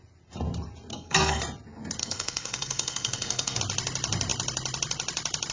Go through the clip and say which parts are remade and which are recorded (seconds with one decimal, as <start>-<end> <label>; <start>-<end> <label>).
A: 0.0-0.9 recorded; 0.9-1.4 remade; 1.4-2.0 recorded; 2.0-3.6 remade; 3.6-5.5 recorded